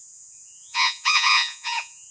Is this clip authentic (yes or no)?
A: no